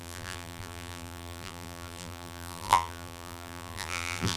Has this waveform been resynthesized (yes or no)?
yes